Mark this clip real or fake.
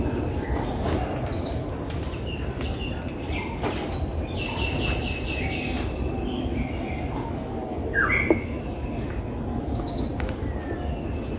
real